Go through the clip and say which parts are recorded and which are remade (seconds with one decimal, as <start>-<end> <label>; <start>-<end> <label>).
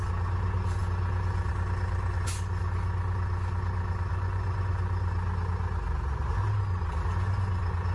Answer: 0.0-4.1 recorded; 4.1-4.7 remade; 4.7-7.9 recorded